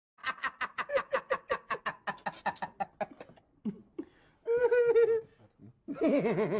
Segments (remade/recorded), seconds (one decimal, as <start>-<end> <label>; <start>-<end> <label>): 0.0-6.6 recorded